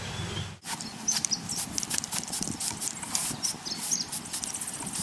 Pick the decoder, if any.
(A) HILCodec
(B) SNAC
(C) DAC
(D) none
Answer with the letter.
D